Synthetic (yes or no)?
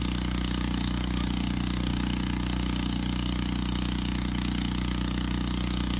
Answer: no